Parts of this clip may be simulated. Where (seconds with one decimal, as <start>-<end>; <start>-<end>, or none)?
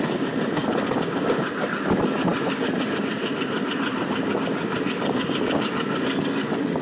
none